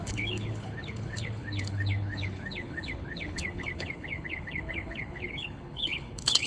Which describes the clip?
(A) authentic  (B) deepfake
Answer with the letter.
B